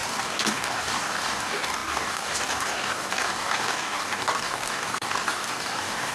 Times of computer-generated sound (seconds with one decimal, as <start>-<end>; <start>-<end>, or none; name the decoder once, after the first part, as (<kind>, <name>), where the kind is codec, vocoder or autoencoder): 0.0-6.1 (codec, DAC)

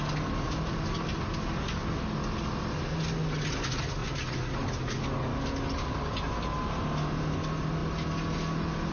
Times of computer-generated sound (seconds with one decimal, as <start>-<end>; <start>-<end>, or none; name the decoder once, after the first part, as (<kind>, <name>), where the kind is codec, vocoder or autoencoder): none

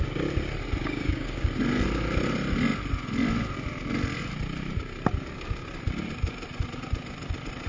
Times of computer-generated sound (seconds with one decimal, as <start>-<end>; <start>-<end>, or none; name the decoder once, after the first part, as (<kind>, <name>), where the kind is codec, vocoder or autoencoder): 0.8-1.5 (codec, DAC)

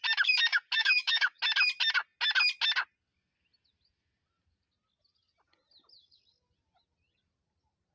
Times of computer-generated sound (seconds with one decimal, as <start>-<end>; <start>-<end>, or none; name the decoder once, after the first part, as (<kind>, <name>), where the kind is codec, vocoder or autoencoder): 0.5-1.4 (codec, DAC)

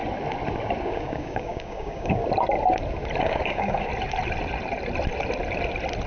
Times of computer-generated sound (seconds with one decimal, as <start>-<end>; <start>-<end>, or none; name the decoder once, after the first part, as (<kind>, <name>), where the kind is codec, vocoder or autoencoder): 0.8-2.2 (codec, DAC); 3.2-3.9

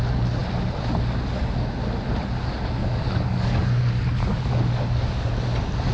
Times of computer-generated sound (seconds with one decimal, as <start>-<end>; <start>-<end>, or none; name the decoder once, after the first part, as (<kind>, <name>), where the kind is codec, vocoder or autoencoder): 2.8-3.8 (codec, DAC); 4.2-5.3

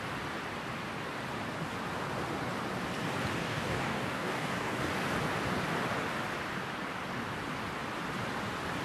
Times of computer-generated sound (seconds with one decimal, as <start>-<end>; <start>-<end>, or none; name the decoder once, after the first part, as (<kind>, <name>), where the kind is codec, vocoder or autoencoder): 3.4-4.8 (codec, DAC)

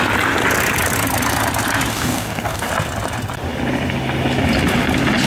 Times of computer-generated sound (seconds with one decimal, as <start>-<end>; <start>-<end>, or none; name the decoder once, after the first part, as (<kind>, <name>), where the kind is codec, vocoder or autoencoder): 1.9-2.7 (codec, DAC)